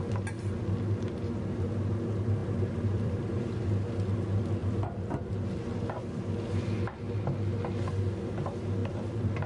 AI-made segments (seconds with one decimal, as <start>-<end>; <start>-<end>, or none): 2.4-3.4; 4.6-5.3; 8.8-9.5